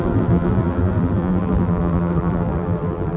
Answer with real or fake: fake